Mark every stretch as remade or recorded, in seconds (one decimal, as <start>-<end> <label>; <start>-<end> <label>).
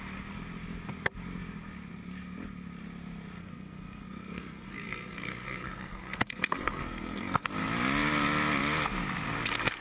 0.0-3.4 recorded; 3.4-7.5 remade; 7.5-9.8 recorded